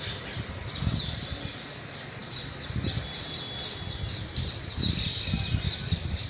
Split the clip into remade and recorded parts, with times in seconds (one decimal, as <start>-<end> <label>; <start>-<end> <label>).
0.0-6.3 recorded